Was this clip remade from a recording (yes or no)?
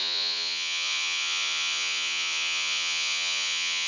yes